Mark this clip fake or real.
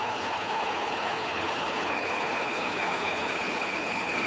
fake